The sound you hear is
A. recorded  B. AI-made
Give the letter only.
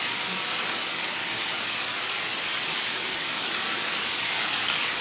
B